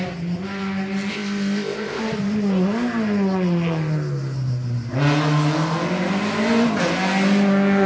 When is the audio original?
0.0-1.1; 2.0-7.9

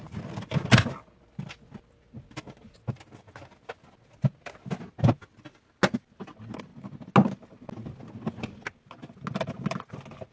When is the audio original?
0.0-10.3

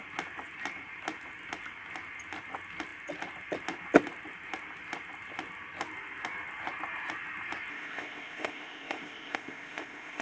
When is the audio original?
0.0-7.7

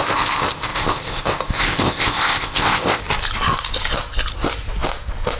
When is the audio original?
3.0-5.4

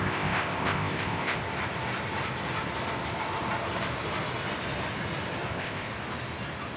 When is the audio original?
1.4-5.5; 5.9-6.8

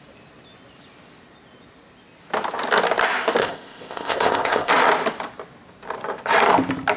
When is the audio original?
0.0-3.4; 4.7-7.0

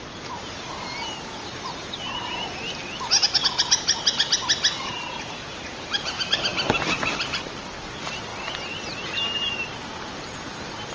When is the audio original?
0.0-10.9

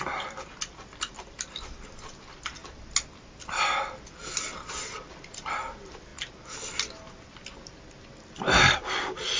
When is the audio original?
0.0-9.4